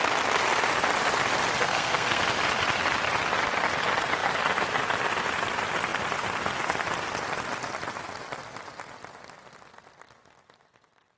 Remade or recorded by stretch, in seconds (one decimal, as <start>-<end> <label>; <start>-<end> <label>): 0.0-1.6 recorded; 1.6-2.2 remade; 2.2-11.2 recorded